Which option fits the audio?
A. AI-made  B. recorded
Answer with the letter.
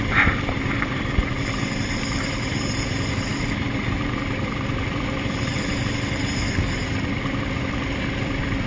A